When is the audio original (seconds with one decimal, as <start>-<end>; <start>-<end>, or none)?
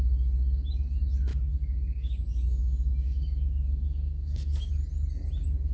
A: 0.0-1.3; 4.7-5.7